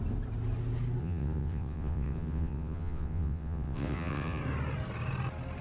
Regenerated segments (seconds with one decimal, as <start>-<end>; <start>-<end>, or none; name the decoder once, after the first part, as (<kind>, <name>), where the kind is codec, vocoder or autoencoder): 1.0-4.4 (vocoder, WaveNeXt)